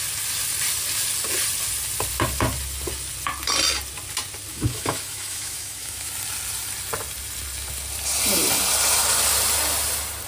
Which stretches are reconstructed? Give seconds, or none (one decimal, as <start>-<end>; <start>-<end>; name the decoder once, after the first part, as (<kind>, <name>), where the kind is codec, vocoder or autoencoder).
4.5-6.1 (autoencoder, DAC-VAE)